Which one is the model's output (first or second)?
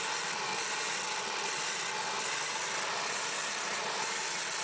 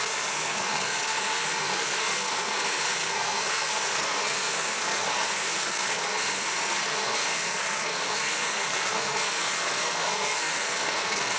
second